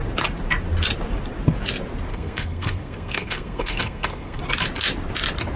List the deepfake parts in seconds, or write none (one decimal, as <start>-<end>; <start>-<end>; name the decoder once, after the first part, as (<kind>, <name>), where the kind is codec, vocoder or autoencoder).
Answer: 2.1-4.4 (codec, SNAC)